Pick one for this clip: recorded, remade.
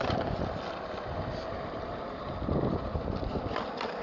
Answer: remade